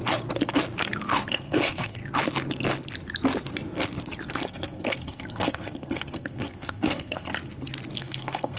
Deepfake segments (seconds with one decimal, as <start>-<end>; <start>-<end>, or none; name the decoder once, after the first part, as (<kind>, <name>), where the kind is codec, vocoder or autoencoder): 1.3-2.0 (codec, SNAC); 4.3-7.3; 8.0-8.6